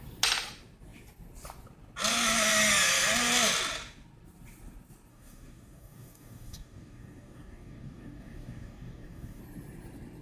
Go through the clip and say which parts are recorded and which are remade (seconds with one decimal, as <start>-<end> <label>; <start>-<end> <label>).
0.0-5.1 recorded; 5.1-9.4 remade; 9.4-10.2 recorded

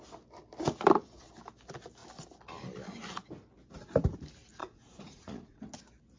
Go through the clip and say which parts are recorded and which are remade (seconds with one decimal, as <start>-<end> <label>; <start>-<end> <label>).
0.0-4.6 recorded; 4.6-5.6 remade; 5.6-6.2 recorded

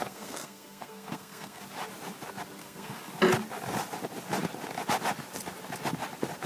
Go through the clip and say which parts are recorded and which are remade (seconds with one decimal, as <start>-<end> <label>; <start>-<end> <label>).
0.0-1.6 remade; 1.6-2.6 recorded; 2.6-3.1 remade; 3.1-6.5 recorded

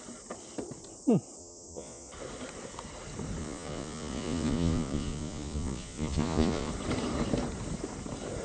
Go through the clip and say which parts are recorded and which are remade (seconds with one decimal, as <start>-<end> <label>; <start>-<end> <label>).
0.0-1.4 recorded; 1.4-2.1 remade; 2.1-3.4 recorded; 3.4-6.7 remade; 6.7-8.4 recorded

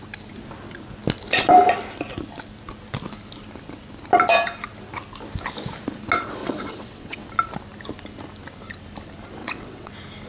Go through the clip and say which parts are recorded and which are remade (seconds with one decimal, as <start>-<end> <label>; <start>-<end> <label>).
0.0-6.4 recorded; 6.4-7.3 remade; 7.3-9.4 recorded; 9.4-9.9 remade; 9.9-10.3 recorded

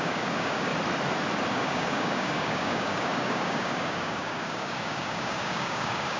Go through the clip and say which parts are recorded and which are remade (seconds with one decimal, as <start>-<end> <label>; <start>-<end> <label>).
0.0-0.7 remade; 0.7-1.5 recorded; 1.5-6.2 remade